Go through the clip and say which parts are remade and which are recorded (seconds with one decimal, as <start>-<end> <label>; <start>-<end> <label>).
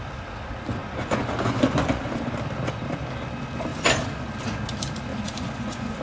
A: 0.0-0.8 recorded; 0.8-2.2 remade; 2.2-5.1 recorded; 5.1-6.0 remade